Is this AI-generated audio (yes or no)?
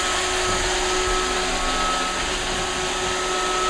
no